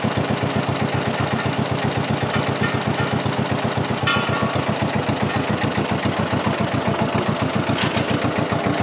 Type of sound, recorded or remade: recorded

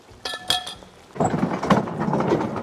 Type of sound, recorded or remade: recorded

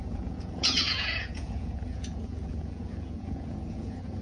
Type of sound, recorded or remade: remade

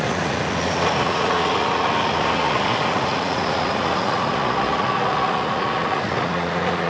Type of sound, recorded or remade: remade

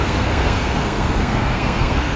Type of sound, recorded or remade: remade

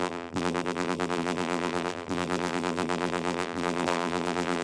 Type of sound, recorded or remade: remade